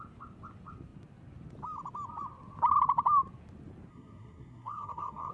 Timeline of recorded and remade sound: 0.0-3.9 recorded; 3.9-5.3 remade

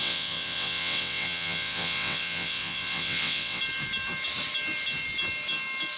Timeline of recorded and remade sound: 0.0-3.6 remade; 3.6-6.0 recorded